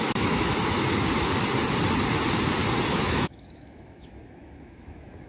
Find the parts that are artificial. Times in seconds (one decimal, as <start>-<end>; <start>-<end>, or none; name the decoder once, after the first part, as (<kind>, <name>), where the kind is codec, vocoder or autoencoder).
0.0-0.5 (autoencoder, DAC-VAE); 2.9-5.3